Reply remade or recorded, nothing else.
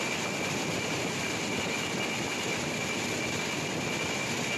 recorded